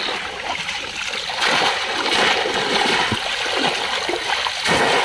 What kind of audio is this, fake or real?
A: fake